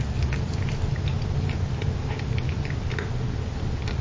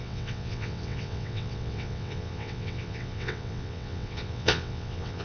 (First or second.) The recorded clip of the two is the first